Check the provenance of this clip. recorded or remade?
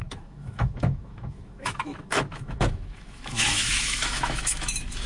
remade